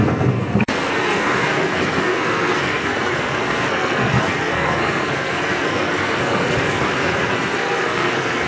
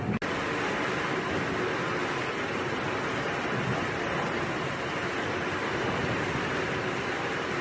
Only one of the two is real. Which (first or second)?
second